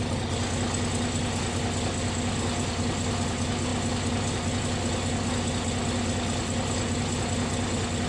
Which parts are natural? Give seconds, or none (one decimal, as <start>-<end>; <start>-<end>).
0.0-8.1